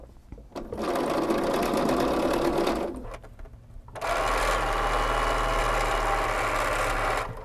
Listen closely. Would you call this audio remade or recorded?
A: recorded